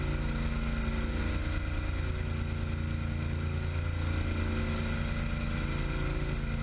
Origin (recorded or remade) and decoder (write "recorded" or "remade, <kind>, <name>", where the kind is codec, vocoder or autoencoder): recorded